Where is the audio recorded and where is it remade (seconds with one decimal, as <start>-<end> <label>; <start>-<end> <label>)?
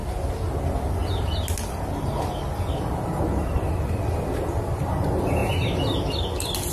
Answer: 0.0-6.7 recorded